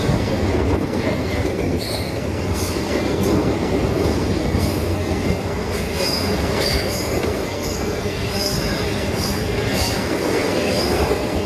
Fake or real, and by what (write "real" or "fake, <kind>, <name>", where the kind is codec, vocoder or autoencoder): fake, codec, SNAC